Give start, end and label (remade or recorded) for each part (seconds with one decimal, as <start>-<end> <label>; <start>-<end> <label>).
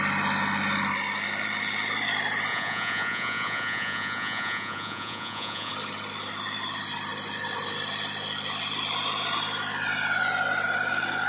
0.0-2.5 recorded; 2.5-5.7 remade; 5.7-11.3 recorded